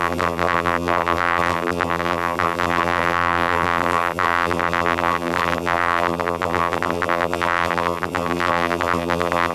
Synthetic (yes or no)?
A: yes